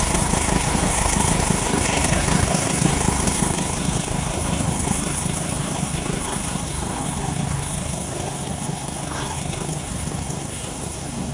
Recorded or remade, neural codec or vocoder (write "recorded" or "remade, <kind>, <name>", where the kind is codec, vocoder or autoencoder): remade, codec, SNAC